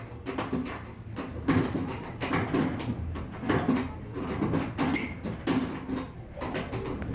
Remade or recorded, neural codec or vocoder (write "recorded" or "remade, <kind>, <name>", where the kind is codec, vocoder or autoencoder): recorded